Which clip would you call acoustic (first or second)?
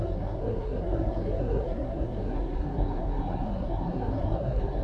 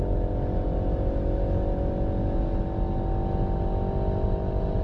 second